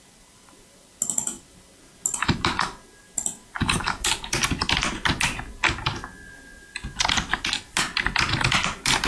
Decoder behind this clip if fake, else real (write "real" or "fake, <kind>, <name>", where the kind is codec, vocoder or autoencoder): real